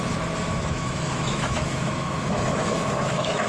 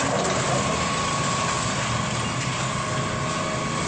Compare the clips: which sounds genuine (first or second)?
second